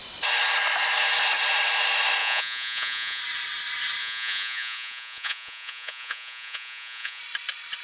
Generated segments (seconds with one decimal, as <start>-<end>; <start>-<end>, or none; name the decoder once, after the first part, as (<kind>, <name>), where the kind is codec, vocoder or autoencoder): 2.2-3.2 (vocoder, Vocos); 4.0-7.2